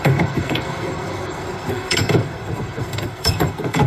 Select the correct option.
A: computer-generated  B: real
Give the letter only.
A